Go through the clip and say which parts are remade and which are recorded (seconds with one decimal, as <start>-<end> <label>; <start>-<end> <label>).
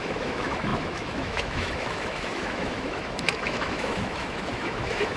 0.0-5.2 remade